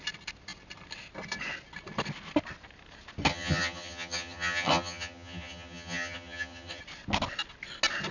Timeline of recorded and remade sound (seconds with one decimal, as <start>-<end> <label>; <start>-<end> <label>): 0.0-3.3 recorded; 3.3-6.8 remade; 6.8-8.1 recorded